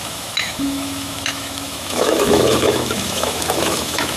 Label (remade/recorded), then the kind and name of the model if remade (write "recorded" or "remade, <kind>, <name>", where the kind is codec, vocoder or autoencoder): remade, autoencoder, DAC-VAE